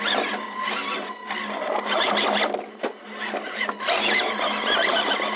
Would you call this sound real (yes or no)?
yes